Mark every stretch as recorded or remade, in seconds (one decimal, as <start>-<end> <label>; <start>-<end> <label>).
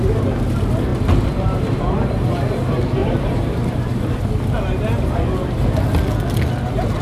0.0-0.9 recorded; 0.9-2.4 remade; 2.4-3.0 recorded; 3.0-4.2 remade; 4.2-7.0 recorded